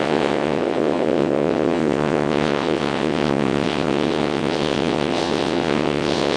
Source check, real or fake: fake